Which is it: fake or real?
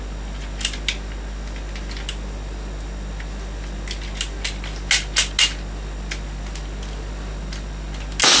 real